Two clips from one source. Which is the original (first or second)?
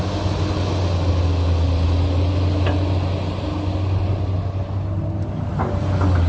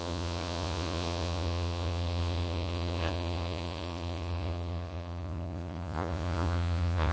first